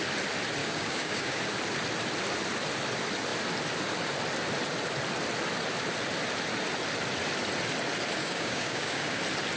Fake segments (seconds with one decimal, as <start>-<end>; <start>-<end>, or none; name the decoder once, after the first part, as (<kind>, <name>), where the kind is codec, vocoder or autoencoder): 0.6-1.4 (codec, DAC); 8.2-9.2